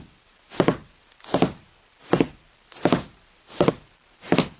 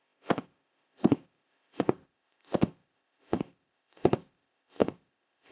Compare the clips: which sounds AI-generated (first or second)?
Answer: second